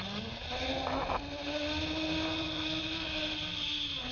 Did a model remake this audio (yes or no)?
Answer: no